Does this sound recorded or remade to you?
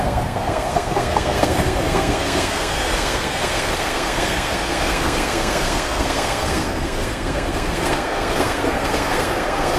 remade